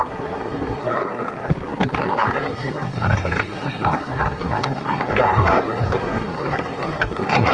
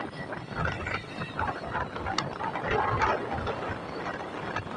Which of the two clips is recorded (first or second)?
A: second